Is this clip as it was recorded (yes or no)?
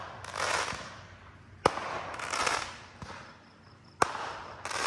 yes